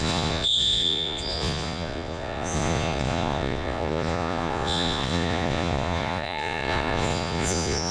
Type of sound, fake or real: fake